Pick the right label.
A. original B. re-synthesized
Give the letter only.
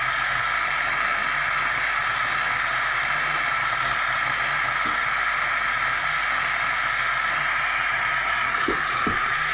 A